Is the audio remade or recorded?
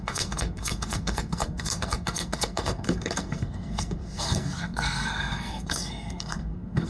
remade